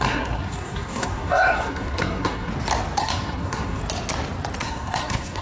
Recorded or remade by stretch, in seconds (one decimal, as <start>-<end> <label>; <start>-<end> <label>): 0.0-2.5 remade; 2.5-3.0 recorded; 3.0-3.8 remade; 3.8-4.6 recorded; 4.6-5.4 remade